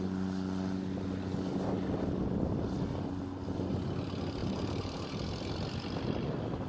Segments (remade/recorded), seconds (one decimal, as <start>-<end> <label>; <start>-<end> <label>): 0.0-4.4 recorded; 4.4-5.1 remade; 5.1-6.7 recorded